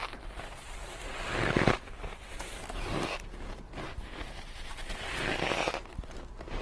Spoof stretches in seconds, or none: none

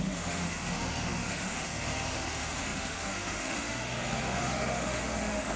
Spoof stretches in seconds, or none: 0.0-5.6 (autoencoder, DAC-VAE)

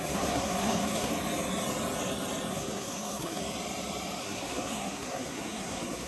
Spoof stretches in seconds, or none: 0.0-1.1 (codec, SNAC); 2.5-3.4; 4.2-6.1